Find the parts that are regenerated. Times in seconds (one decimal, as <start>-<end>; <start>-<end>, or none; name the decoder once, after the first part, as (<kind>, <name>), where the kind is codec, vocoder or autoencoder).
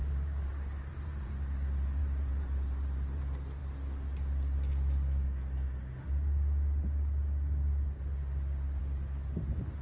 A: 0.0-1.3 (vocoder, BigVGAN v2); 2.0-3.2